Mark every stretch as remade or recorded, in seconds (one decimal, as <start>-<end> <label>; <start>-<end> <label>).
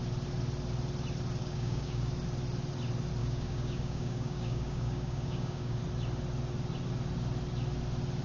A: 0.0-1.4 recorded; 1.4-2.1 remade; 2.1-3.2 recorded; 3.2-5.8 remade; 5.8-8.2 recorded